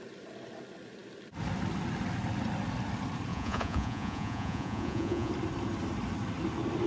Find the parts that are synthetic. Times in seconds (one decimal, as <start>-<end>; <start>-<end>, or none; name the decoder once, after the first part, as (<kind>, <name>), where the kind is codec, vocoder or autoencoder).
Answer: 3.3-5.3 (vocoder, Vocos)